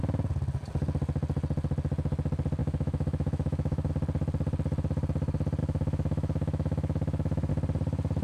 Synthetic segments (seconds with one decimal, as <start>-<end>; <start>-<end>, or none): 2.6-3.9; 5.6-7.5